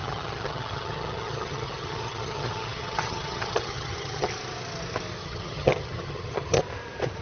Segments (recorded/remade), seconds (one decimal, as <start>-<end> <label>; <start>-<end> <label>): 0.0-4.3 remade; 4.3-5.2 recorded; 5.2-6.6 remade; 6.6-7.2 recorded